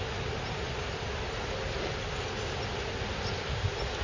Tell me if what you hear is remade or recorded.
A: recorded